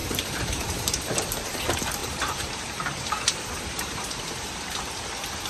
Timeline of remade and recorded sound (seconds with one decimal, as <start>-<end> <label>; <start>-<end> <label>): 0.0-1.6 remade; 1.6-2.0 recorded; 2.0-4.8 remade; 4.8-5.5 recorded